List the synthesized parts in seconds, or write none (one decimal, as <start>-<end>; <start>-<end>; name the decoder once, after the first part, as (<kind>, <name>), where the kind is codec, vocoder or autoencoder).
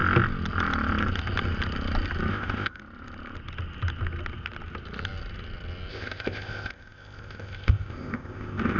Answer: 2.3-2.8 (codec, ZipCodec); 5.9-8.8